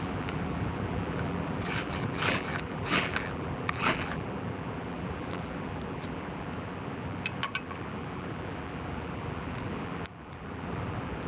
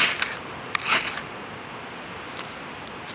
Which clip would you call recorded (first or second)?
second